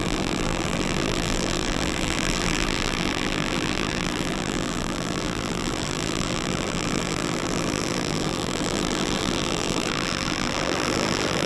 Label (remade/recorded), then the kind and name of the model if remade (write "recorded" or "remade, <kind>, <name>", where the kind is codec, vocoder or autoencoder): remade, vocoder, BigVGAN v2